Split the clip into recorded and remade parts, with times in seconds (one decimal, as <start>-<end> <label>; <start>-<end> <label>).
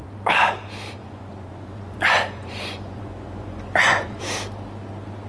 0.0-1.0 recorded; 1.0-4.2 remade; 4.2-5.3 recorded